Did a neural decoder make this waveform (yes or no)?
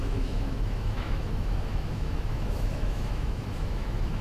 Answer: yes